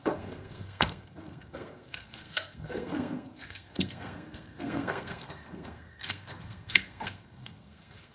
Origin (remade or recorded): remade